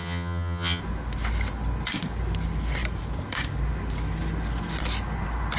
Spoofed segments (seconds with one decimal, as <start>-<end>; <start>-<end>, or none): 0.0-0.8